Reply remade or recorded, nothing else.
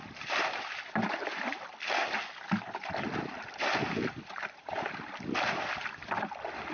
recorded